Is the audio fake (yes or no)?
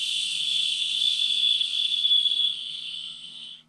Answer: yes